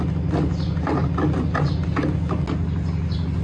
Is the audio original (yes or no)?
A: yes